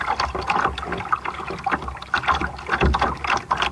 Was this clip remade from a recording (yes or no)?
no